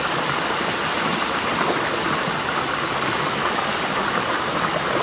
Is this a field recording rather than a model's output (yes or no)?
yes